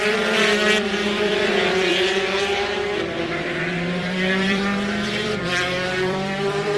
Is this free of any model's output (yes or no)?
no